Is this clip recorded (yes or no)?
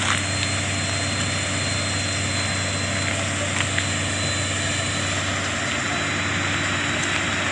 yes